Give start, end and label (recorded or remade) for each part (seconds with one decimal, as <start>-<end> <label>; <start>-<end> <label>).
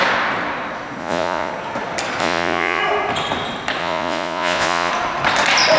0.0-1.0 recorded; 1.0-1.5 remade; 1.5-2.2 recorded; 2.2-2.8 remade; 2.8-3.8 recorded; 3.8-4.9 remade; 4.9-5.8 recorded